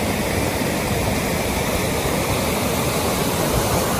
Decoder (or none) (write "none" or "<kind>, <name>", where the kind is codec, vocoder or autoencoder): none